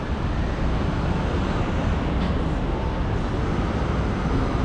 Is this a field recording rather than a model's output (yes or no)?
yes